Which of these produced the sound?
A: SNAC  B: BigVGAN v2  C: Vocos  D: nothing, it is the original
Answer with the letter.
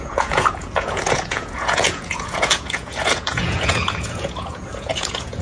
C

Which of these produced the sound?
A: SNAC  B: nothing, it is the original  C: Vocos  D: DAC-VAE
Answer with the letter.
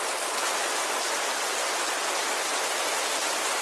B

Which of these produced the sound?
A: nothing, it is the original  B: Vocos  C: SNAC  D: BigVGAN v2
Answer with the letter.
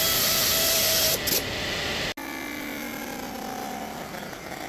A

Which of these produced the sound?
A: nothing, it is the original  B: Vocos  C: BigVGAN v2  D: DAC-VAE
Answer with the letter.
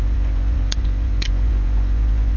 B